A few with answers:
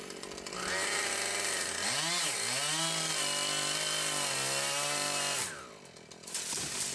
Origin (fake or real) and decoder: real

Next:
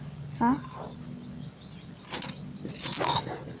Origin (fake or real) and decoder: real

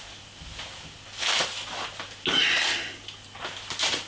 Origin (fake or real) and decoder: real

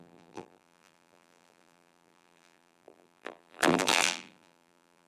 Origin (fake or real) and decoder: fake, vocoder, BigVGAN v2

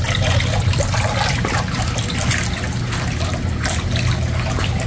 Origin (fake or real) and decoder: real